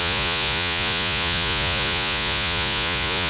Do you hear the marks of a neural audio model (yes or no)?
yes